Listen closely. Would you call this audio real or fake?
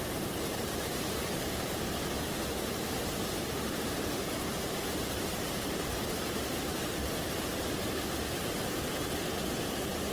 fake